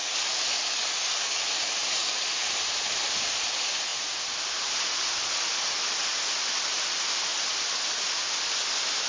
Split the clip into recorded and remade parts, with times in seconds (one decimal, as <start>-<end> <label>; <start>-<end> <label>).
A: 0.0-1.4 remade; 1.4-1.8 recorded; 1.8-2.5 remade; 2.5-9.1 recorded